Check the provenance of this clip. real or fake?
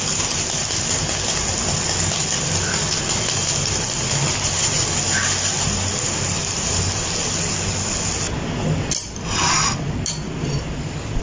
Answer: real